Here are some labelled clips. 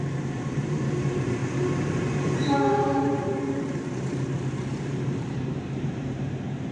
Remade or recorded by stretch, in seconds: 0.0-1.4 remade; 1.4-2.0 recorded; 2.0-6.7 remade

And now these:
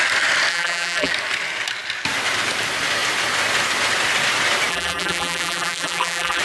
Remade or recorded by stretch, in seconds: 0.0-0.5 recorded; 0.5-1.1 remade; 1.1-4.7 recorded; 4.7-6.4 remade

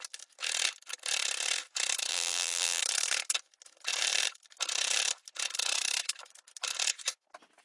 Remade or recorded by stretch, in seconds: 0.0-2.1 recorded; 2.1-2.8 remade; 2.8-7.6 recorded

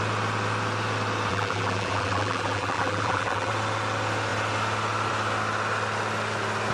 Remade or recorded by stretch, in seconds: 0.0-1.3 recorded; 1.3-3.5 remade; 3.5-6.7 recorded

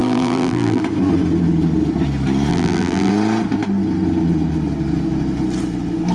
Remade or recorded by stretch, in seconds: 0.0-0.8 remade; 0.8-2.5 recorded; 2.5-3.1 remade; 3.1-6.1 recorded